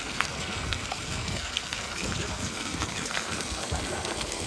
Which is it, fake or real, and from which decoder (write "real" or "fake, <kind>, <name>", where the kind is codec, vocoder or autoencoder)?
fake, codec, SNAC